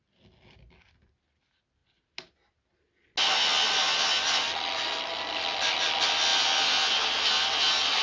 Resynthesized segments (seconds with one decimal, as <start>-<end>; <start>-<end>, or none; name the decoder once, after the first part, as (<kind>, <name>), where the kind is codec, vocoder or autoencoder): none